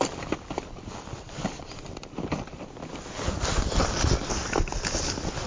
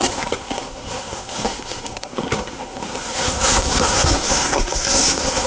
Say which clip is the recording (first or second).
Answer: first